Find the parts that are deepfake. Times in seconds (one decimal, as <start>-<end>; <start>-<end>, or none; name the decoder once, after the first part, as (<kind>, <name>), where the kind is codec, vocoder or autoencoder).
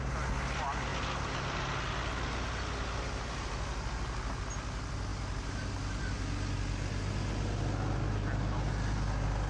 none